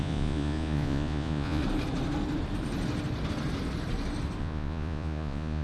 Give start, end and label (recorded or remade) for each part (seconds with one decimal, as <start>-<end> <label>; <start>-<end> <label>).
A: 0.0-1.6 remade; 1.6-4.4 recorded; 4.4-5.6 remade